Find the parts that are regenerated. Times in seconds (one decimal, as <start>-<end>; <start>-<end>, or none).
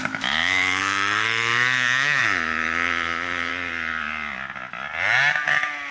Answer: 0.0-3.5